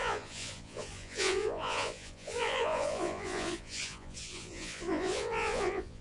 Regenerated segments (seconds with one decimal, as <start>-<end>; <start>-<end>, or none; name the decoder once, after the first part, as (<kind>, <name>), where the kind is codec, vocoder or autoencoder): 0.0-6.0 (vocoder, Vocos)